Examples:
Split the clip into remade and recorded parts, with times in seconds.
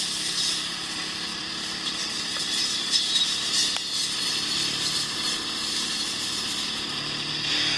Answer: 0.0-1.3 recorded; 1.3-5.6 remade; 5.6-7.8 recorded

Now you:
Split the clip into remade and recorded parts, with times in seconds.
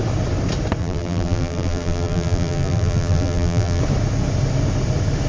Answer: 0.0-0.8 recorded; 0.8-3.8 remade; 3.8-5.3 recorded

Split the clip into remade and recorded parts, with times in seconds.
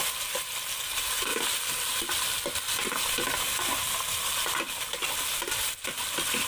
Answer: 0.0-6.5 recorded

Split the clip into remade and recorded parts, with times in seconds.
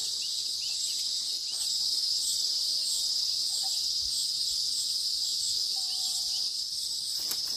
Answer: 0.0-5.3 recorded; 5.3-5.8 remade; 5.8-7.6 recorded